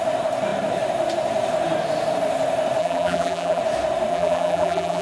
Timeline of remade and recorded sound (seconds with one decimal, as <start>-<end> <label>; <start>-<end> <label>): 0.0-2.8 recorded; 2.8-3.6 remade; 3.6-4.1 recorded; 4.1-5.0 remade